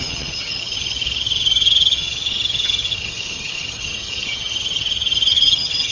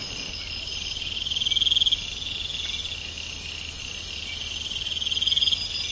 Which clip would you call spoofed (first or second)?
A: first